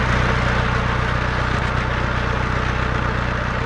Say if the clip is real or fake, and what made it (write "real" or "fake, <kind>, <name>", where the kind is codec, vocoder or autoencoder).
real